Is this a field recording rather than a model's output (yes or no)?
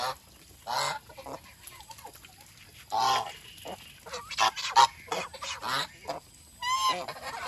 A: yes